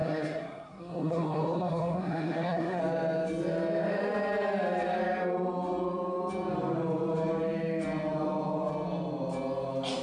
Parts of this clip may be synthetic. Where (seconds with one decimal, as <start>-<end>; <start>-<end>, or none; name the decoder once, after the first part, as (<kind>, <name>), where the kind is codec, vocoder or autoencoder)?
0.0-2.8 (codec, SNAC)